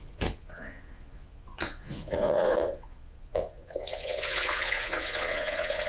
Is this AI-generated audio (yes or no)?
yes